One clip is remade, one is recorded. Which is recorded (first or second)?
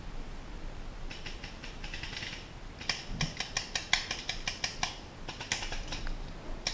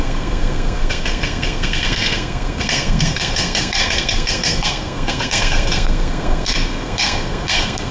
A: first